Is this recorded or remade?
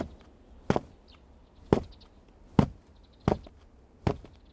recorded